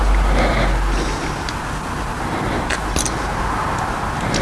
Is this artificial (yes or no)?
no